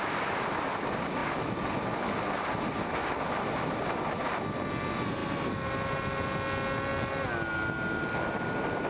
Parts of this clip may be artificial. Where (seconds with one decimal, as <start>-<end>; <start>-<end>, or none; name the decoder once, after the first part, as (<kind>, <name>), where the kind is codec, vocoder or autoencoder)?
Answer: none

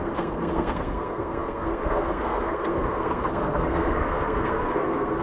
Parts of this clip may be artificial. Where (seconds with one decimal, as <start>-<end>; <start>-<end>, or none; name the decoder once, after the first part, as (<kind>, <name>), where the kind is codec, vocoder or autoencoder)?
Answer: 0.0-5.2 (codec, SNAC)

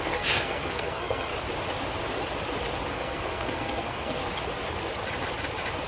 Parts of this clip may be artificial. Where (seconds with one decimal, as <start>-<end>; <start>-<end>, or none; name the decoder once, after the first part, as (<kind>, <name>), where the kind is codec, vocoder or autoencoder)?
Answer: 0.0-1.3 (codec, SNAC); 2.9-4.2

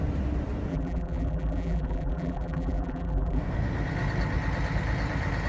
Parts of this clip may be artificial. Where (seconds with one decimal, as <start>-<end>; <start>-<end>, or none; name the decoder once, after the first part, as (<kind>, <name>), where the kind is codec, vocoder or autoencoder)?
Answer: 0.7-3.4 (vocoder, BigVGAN v2)